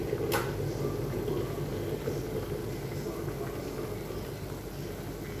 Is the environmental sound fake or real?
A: real